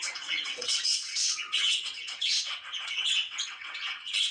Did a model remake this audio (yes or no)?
yes